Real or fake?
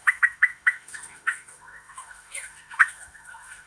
fake